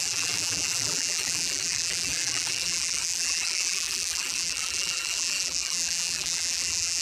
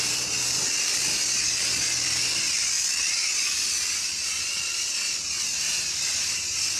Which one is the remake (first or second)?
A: first